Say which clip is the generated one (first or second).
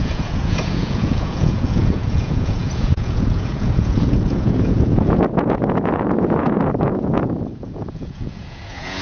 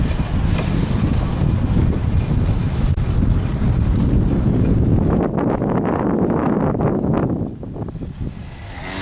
first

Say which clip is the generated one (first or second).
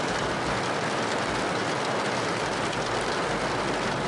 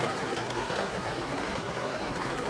second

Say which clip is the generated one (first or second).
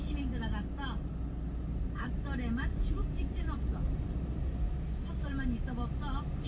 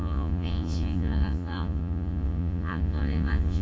second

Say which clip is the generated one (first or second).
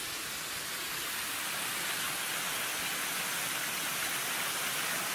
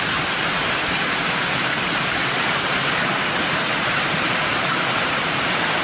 second